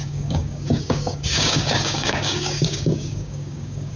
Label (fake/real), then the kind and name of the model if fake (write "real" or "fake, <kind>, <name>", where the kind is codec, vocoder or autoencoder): fake, codec, DAC